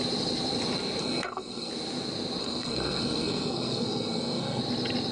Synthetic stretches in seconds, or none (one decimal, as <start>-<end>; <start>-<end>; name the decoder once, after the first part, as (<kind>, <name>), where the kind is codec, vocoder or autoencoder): 1.0-1.7 (codec, SNAC); 2.4-4.6